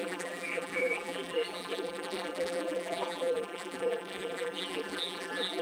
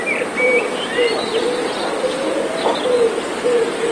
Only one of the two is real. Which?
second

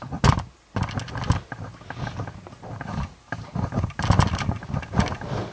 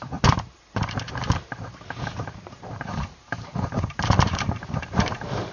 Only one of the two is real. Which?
first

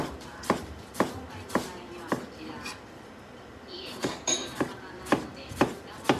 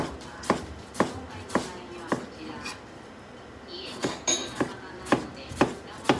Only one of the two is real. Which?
second